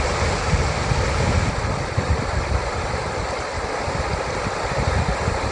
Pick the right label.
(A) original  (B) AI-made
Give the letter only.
A